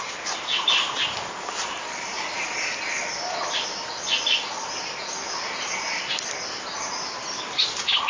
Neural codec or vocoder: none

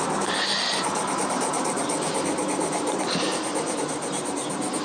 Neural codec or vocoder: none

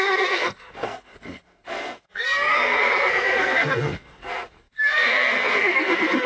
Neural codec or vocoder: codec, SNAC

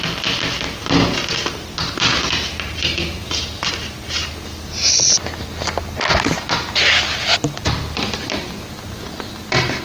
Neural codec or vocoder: none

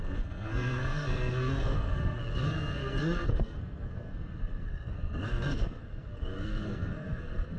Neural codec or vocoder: codec, SNAC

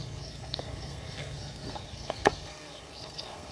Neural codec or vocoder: codec, SNAC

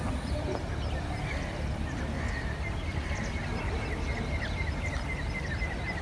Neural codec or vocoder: none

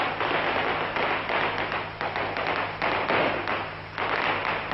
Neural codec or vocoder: none